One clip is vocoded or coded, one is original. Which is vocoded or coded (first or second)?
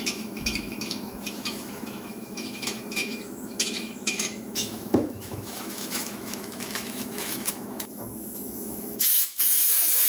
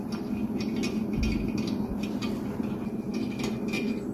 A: first